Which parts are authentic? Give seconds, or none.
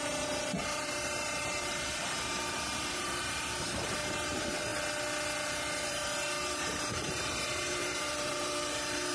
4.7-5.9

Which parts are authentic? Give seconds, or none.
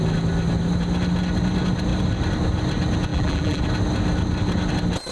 0.0-3.1; 3.6-5.1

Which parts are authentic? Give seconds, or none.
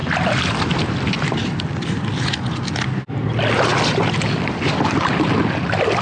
2.3-6.0